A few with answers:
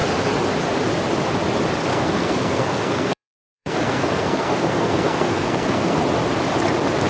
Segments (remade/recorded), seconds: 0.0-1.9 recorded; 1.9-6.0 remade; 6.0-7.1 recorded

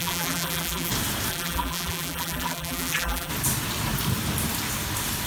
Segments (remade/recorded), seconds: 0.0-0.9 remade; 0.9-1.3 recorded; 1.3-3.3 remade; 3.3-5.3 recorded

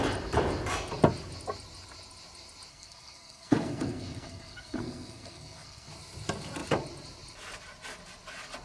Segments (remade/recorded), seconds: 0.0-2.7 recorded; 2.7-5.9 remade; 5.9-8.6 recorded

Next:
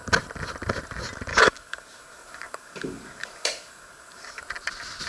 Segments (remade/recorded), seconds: 0.0-1.3 recorded; 1.3-4.4 remade; 4.4-5.1 recorded

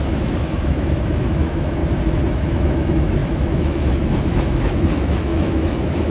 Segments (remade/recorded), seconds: 0.0-1.8 remade; 1.8-2.3 recorded; 2.3-6.1 remade

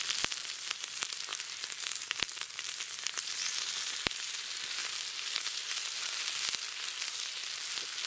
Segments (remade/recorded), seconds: 0.0-1.3 recorded; 1.3-3.0 remade; 3.0-4.8 recorded; 4.8-5.7 remade; 5.7-8.1 recorded

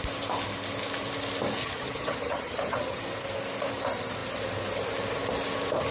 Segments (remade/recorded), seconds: 0.0-1.6 recorded; 1.6-3.0 remade; 3.0-5.9 recorded

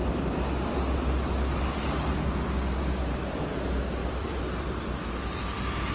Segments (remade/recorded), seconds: 0.0-4.0 recorded; 4.0-5.1 remade; 5.1-5.9 recorded